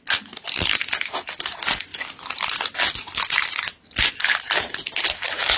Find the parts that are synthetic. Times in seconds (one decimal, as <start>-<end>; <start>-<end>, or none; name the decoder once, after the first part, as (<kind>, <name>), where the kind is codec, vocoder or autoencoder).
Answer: 1.9-2.8 (vocoder, BigVGAN v2)